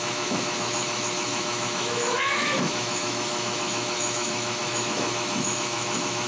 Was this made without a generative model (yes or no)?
no